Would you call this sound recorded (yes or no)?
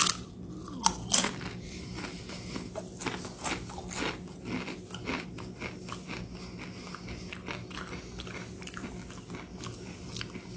yes